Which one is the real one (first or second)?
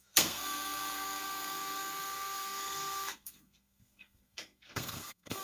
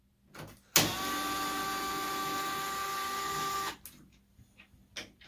second